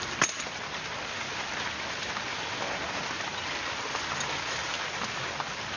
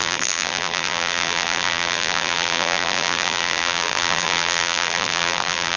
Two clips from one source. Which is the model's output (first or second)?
second